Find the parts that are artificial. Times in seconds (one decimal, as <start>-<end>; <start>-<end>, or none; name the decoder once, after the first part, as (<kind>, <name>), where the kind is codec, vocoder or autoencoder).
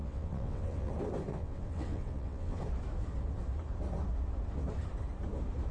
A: 0.0-0.9 (vocoder, WaveNeXt); 1.3-2.6